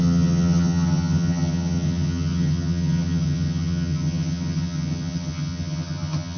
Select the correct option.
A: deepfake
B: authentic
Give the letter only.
A